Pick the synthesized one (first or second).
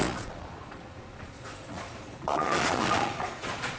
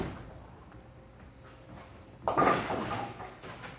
first